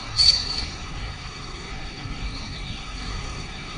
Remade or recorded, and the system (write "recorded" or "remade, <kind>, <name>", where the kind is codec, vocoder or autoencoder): remade, codec, SNAC